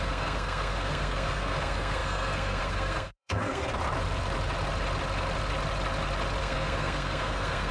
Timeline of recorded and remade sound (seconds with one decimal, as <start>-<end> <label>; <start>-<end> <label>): 0.0-3.7 remade; 3.7-6.4 recorded; 6.4-7.7 remade